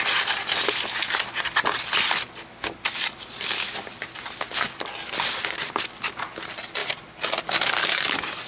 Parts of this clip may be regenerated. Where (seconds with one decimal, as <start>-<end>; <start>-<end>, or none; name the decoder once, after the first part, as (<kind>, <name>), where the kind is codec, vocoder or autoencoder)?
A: none